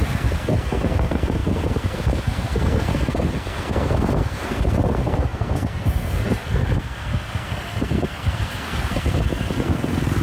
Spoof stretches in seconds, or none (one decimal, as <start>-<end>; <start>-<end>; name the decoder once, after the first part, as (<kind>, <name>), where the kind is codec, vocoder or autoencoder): 0.0-10.2 (codec, SNAC)